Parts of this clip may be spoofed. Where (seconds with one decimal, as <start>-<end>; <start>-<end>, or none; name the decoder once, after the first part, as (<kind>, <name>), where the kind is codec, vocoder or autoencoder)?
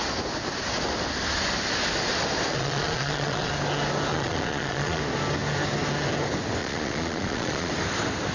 2.5-3.5 (vocoder, Vocos); 4.1-5.0; 6.6-7.7